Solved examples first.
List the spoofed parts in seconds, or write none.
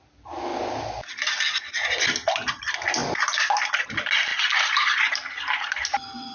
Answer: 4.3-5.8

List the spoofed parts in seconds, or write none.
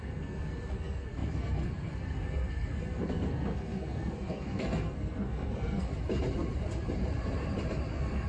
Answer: 0.0-5.9; 7.9-8.3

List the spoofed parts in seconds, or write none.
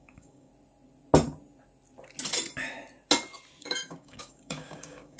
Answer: 0.0-0.5; 3.6-5.2